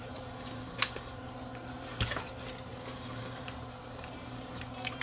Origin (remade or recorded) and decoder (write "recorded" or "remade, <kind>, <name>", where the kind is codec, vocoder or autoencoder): remade, vocoder, BigVGAN v2